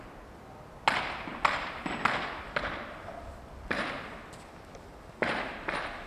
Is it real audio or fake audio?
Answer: real